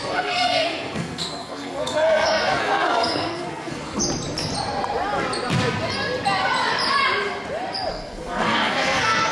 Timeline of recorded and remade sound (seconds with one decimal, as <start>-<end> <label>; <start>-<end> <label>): 0.0-4.0 remade; 4.0-7.9 recorded; 7.9-9.3 remade